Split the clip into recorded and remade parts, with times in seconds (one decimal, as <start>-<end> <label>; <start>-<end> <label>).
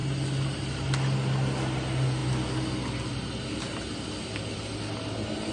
0.0-5.5 recorded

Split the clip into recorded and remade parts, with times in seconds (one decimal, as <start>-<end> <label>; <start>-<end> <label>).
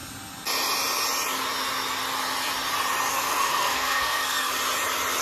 0.0-3.1 recorded; 3.1-4.5 remade; 4.5-5.2 recorded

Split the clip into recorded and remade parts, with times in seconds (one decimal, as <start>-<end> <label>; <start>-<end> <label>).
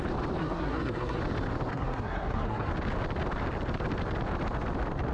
0.0-0.4 recorded; 0.4-1.2 remade; 1.2-1.7 recorded; 1.7-2.7 remade; 2.7-5.1 recorded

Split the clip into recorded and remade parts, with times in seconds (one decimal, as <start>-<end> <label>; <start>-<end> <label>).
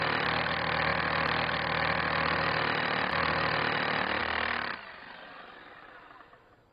0.0-6.7 recorded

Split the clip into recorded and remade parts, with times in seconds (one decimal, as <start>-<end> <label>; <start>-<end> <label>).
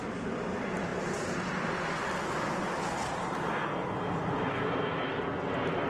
0.0-5.9 recorded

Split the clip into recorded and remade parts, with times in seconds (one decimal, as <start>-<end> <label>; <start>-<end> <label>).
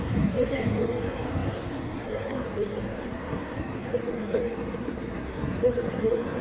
0.0-6.4 remade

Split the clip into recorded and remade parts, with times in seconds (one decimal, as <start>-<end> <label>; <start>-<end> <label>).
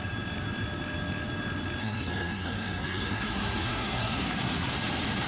0.0-1.8 recorded; 1.8-4.7 remade; 4.7-5.3 recorded